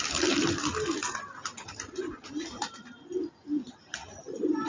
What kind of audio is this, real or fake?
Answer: real